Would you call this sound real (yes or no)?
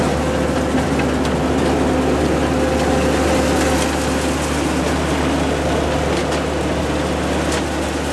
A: yes